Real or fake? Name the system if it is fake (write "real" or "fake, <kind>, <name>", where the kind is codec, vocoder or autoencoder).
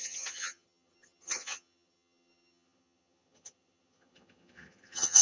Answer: fake, vocoder, HiFi-GAN